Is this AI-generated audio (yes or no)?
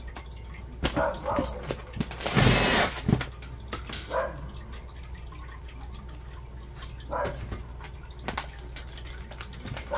no